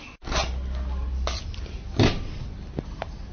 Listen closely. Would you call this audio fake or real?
real